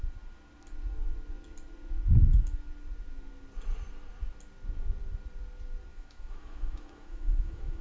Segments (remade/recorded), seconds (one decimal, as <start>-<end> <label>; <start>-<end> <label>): 0.0-5.9 recorded; 5.9-7.8 remade